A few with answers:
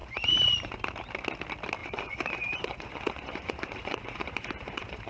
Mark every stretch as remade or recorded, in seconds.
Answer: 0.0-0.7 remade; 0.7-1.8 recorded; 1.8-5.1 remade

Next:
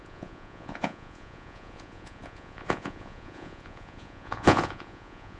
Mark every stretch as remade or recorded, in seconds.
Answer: 0.0-5.4 remade

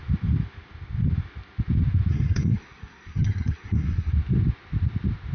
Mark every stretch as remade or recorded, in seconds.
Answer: 0.0-2.1 recorded; 2.1-4.1 remade; 4.1-5.3 recorded

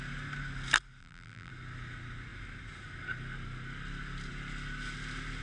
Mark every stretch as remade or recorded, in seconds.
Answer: 0.0-1.0 recorded; 1.0-1.5 remade; 1.5-5.4 recorded